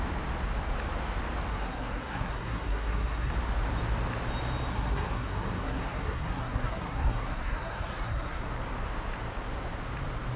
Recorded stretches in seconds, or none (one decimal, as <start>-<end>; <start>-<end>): 0.0-1.5; 3.3-4.7; 8.5-10.4